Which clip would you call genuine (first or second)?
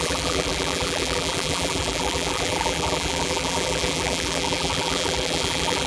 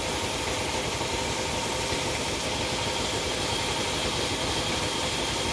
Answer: second